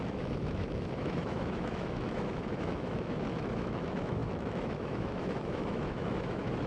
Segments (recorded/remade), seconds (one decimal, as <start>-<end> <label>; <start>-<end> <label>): 0.0-6.7 remade